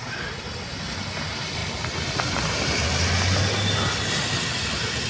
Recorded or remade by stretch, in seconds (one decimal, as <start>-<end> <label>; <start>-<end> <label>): 0.0-5.1 recorded